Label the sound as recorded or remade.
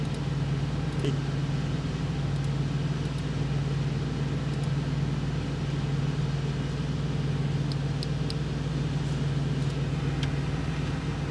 recorded